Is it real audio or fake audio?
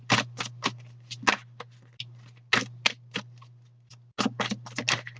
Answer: real